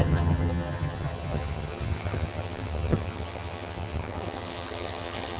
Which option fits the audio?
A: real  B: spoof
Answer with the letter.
B